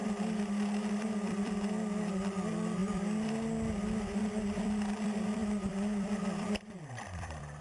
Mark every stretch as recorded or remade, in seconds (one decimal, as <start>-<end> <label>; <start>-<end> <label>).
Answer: 0.0-7.6 remade